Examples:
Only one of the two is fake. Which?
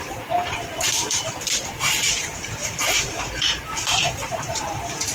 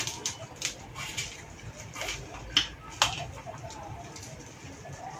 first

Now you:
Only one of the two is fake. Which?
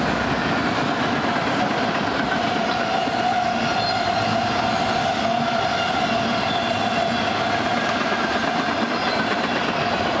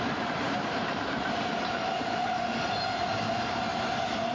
second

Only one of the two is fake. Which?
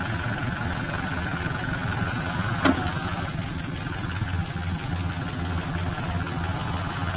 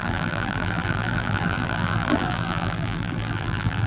second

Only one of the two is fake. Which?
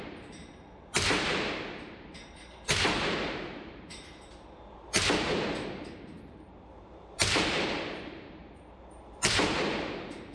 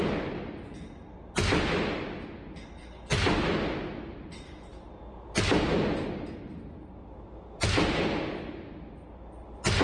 first